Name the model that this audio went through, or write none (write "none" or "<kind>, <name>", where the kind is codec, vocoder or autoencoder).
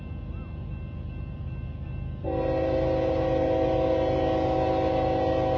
none